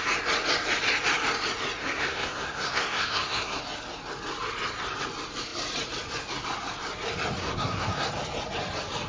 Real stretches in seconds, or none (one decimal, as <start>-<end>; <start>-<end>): 0.0-1.8; 3.6-7.4; 8.1-9.1